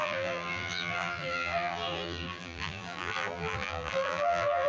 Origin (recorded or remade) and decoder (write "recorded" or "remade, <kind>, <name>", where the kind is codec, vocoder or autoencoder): remade, vocoder, BigVGAN v2